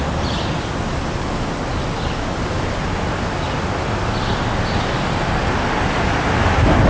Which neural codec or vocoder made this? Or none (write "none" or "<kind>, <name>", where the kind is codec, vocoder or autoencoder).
none